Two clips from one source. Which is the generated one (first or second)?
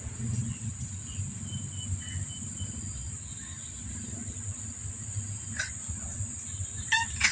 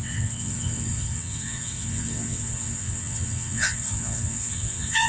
second